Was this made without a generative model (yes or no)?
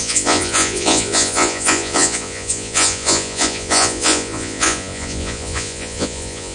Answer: no